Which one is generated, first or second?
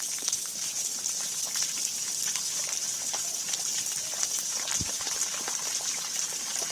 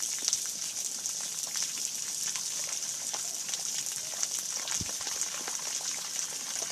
first